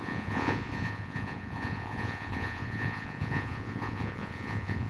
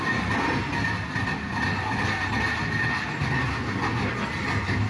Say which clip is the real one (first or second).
second